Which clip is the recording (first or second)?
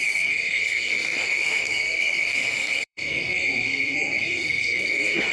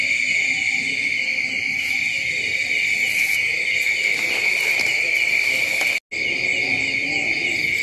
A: second